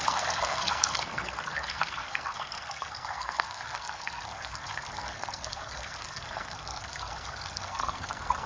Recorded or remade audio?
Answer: remade